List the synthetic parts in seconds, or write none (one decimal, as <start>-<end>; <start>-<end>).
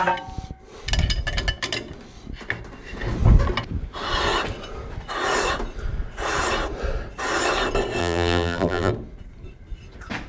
8.0-8.9